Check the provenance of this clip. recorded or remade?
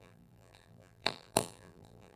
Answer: remade